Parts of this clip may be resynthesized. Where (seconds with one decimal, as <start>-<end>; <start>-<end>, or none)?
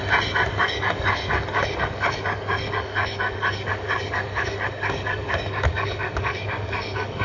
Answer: 0.6-7.2